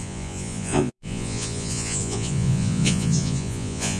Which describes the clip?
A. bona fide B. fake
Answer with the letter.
B